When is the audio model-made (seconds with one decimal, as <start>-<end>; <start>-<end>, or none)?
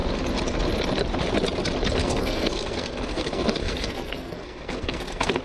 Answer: 2.0-5.4